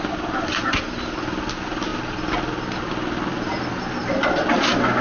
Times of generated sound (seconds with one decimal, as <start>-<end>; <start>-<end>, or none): none